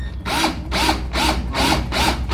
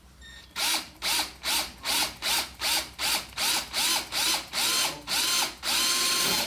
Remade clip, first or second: second